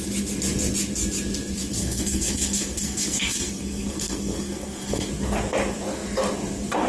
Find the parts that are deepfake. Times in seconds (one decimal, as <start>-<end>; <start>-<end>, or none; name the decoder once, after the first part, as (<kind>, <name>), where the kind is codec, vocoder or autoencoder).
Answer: 1.8-5.1 (codec, SNAC)